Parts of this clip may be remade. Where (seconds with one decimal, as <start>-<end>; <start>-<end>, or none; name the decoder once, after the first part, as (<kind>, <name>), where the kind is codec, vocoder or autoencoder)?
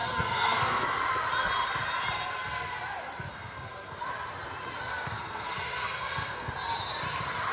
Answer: 0.0-0.8 (codec, SNAC); 3.3-4.0; 4.9-6.5